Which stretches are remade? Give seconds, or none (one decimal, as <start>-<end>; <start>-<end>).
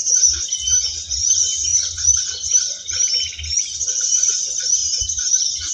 none